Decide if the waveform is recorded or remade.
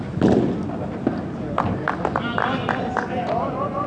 recorded